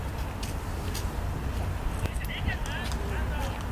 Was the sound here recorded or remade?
recorded